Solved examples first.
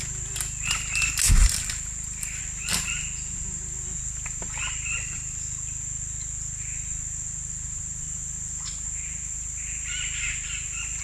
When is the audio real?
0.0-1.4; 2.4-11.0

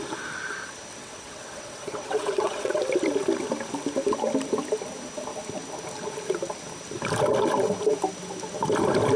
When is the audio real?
0.0-1.0; 2.8-9.2

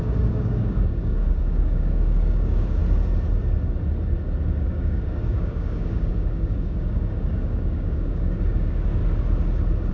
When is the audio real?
2.8-4.7; 9.0-9.9

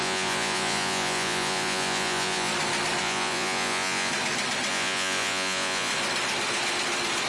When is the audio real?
2.5-3.0; 4.1-4.7; 5.9-7.3

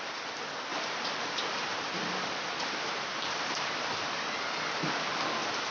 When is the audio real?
0.0-0.7; 4.1-5.7

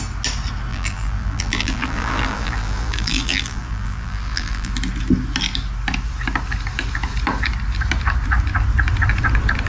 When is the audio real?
0.0-0.7; 4.7-9.7